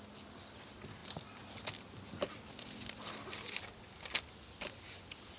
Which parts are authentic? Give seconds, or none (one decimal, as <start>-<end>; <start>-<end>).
0.0-5.4